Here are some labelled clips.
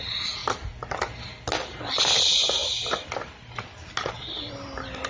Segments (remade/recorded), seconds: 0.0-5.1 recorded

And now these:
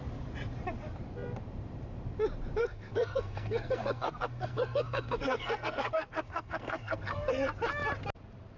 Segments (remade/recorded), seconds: 0.0-2.6 recorded; 2.6-7.3 remade; 7.3-8.6 recorded

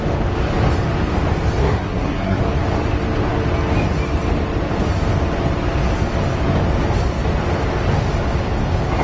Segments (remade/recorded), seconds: 0.0-1.6 recorded; 1.6-2.4 remade; 2.4-9.0 recorded

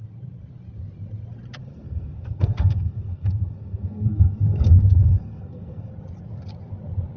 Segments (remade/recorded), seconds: 0.0-1.6 recorded; 1.6-5.9 remade; 5.9-7.2 recorded

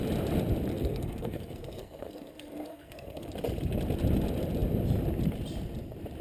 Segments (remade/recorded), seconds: 0.0-0.7 recorded; 0.7-3.3 remade; 3.3-6.2 recorded

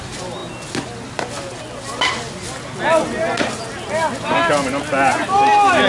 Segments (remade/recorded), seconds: 0.0-5.9 recorded

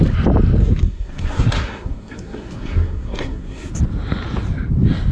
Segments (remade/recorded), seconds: 0.0-0.6 recorded; 0.6-3.7 remade; 3.7-5.1 recorded

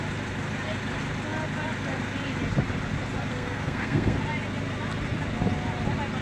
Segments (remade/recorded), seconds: 0.0-3.3 recorded; 3.3-4.2 remade; 4.2-6.2 recorded